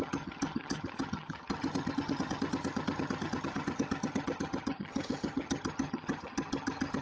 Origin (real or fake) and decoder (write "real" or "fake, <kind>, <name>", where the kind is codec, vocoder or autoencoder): fake, vocoder, HiFi-GAN